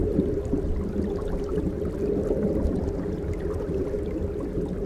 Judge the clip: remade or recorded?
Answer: recorded